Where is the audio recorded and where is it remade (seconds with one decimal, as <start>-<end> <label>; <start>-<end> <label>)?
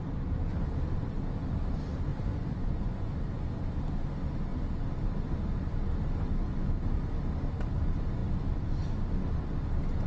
0.0-2.1 recorded; 2.1-3.1 remade; 3.1-10.1 recorded